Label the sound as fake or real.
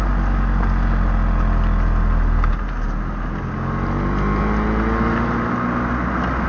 real